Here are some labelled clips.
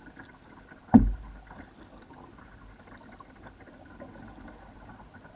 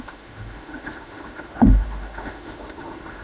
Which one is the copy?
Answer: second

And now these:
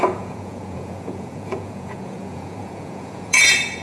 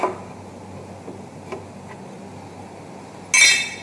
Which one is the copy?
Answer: first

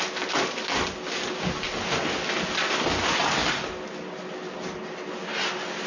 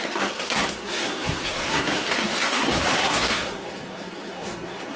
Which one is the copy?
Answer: second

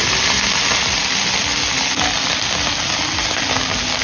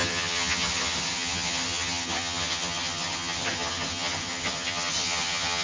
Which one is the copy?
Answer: second